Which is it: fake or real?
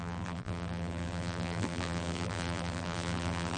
fake